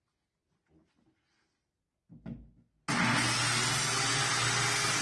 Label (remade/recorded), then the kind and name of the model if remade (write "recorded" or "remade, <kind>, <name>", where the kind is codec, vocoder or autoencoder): recorded